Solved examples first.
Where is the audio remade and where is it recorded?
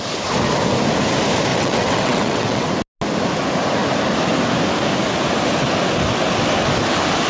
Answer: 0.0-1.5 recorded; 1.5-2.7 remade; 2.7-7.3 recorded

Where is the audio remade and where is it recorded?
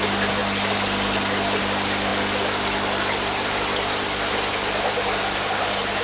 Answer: 0.0-6.0 recorded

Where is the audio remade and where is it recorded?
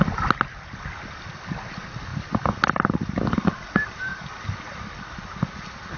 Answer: 0.0-6.0 recorded